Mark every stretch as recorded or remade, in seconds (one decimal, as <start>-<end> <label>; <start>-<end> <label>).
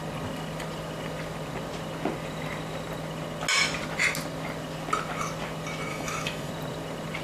0.0-5.9 recorded; 5.9-6.5 remade; 6.5-7.2 recorded